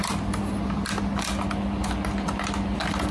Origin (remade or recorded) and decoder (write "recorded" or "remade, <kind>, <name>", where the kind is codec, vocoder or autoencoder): recorded